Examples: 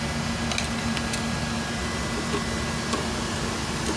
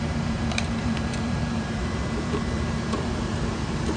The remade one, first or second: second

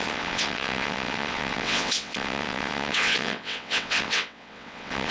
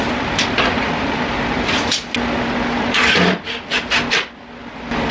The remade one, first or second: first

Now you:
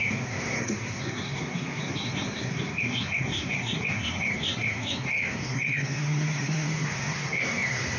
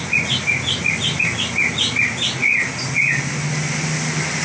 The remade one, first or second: first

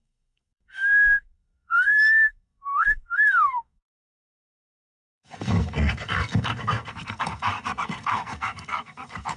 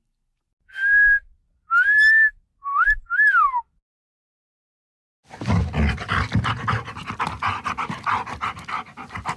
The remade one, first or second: first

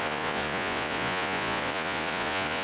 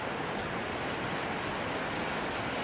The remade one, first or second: first